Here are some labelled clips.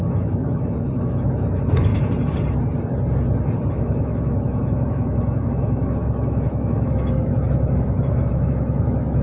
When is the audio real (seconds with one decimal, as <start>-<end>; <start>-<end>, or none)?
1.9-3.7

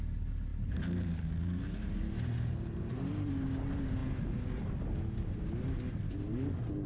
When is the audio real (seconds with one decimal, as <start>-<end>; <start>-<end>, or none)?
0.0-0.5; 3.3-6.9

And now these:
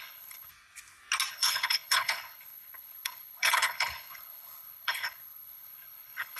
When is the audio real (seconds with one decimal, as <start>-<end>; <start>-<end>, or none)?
0.5-1.3

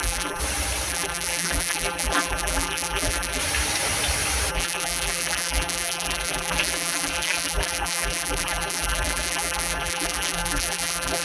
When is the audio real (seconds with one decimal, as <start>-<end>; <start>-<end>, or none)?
0.4-0.9; 3.4-4.5

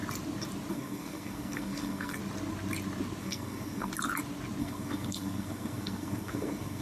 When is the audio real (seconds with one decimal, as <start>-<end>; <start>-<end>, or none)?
0.0-0.7; 2.2-3.2; 3.9-4.6

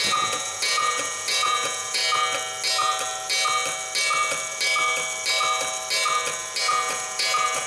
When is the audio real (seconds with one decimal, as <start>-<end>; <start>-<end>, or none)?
2.0-6.6

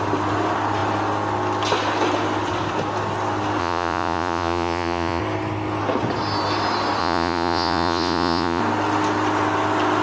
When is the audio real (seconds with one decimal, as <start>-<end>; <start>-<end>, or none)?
0.0-3.6; 5.2-7.0; 8.6-10.0

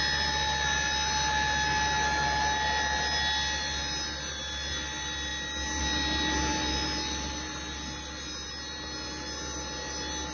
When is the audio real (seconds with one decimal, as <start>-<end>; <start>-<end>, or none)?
0.0-10.3